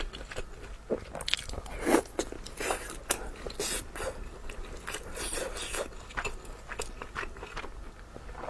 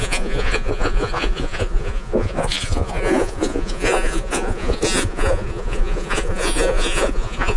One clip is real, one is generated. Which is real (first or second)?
first